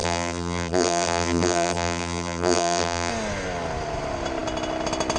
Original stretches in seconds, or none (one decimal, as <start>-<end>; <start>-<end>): 3.1-5.2